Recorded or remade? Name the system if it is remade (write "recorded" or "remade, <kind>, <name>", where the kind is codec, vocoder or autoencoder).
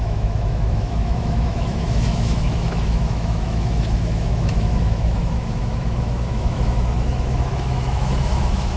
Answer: remade, autoencoder, DAC-VAE